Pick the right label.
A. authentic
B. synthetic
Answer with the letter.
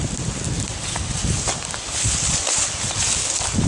A